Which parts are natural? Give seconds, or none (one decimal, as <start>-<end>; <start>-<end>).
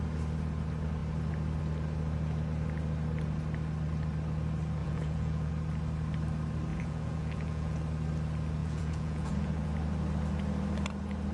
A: 0.0-4.8; 5.5-6.7; 7.8-8.6; 9.6-11.3